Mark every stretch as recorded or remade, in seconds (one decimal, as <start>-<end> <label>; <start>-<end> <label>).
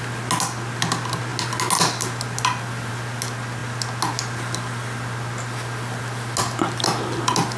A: 0.0-7.6 recorded